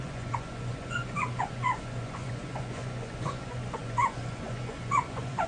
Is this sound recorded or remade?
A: remade